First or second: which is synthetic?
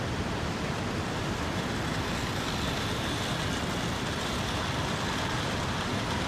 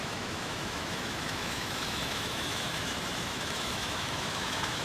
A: second